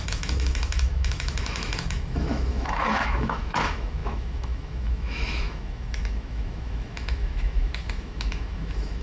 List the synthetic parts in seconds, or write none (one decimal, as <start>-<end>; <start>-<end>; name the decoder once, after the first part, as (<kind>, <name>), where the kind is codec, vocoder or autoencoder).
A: 0.0-9.0 (autoencoder, DAC-VAE)